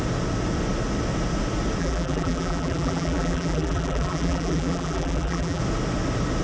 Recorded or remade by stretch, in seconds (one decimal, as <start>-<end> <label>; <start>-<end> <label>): 0.0-1.8 recorded; 1.8-5.6 remade; 5.6-6.4 recorded